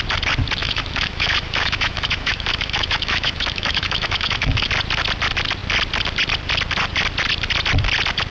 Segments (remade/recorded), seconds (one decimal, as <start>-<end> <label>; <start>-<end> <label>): 0.0-0.6 recorded; 0.6-4.7 remade; 4.7-8.3 recorded